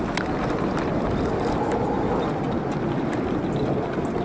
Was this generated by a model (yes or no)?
no